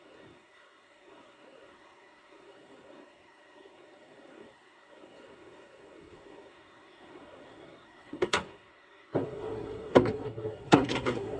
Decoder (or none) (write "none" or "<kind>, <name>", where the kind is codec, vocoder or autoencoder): codec, SNAC